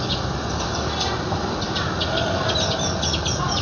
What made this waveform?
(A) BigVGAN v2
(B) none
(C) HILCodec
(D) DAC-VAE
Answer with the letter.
B